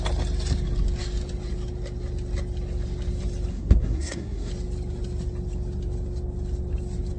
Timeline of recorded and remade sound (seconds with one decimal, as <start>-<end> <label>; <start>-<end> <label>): 0.0-3.5 recorded; 3.5-4.5 remade; 4.5-7.2 recorded

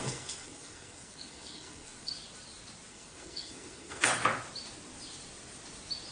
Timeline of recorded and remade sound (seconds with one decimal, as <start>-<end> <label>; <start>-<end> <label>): 0.0-2.1 remade; 2.1-2.9 recorded; 2.9-4.1 remade; 4.1-6.1 recorded

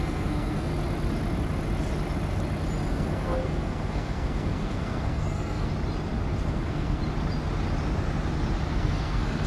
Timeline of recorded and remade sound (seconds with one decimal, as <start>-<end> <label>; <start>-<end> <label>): 0.0-0.7 remade; 0.7-2.9 recorded; 2.9-5.7 remade; 5.7-6.4 recorded; 6.4-7.0 remade; 7.0-8.7 recorded; 8.7-9.5 remade

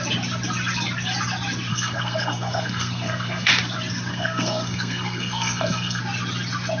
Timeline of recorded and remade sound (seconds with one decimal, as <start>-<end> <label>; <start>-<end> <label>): 0.0-1.7 recorded; 1.7-3.5 remade; 3.5-4.1 recorded; 4.1-6.0 remade; 6.0-6.8 recorded

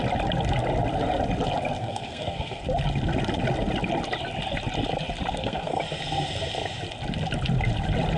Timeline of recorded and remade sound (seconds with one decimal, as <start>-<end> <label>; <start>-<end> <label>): 0.0-1.8 recorded; 1.8-2.6 remade; 2.6-5.3 recorded; 5.3-5.8 remade; 5.8-8.2 recorded

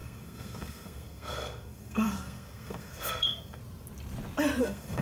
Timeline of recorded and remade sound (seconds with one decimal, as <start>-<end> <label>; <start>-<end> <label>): 0.0-3.6 remade; 3.6-4.6 recorded; 4.6-5.0 remade